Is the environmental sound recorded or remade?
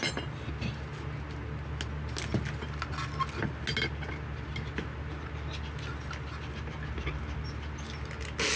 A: recorded